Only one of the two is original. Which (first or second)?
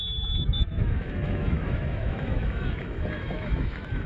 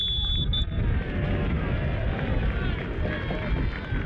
second